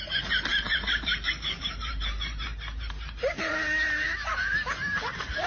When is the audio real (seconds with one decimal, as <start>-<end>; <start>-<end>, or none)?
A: 0.0-0.5; 3.5-5.5